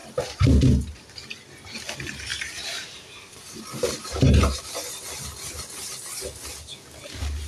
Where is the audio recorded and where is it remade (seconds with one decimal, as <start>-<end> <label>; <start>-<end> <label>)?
0.0-2.3 recorded; 2.3-4.6 remade; 4.6-7.5 recorded